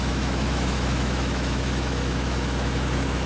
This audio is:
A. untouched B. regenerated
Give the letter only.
B